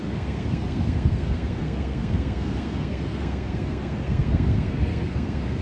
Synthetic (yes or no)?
yes